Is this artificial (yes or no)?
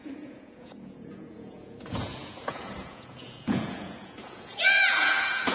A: yes